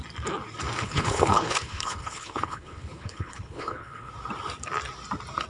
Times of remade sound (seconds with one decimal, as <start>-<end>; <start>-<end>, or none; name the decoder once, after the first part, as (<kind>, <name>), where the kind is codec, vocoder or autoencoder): 0.8-4.1 (codec, HILCodec)